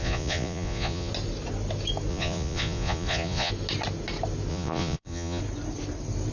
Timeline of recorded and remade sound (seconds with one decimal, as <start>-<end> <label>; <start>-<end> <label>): 0.0-1.1 remade; 1.1-2.1 recorded; 2.1-3.5 remade; 3.5-4.5 recorded; 4.5-5.4 remade; 5.4-6.3 recorded